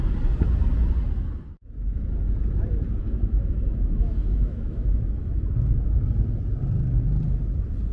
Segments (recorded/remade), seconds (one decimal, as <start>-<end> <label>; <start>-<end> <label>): 0.0-3.0 recorded; 3.0-6.0 remade; 6.0-7.9 recorded